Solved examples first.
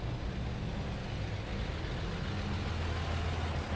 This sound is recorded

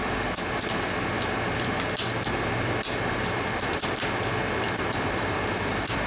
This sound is remade